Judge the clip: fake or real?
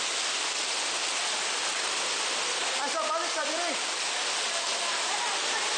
real